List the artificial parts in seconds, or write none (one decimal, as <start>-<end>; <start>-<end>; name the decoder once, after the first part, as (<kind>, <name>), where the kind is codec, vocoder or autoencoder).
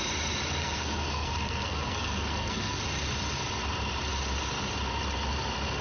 0.6-2.8 (codec, SNAC)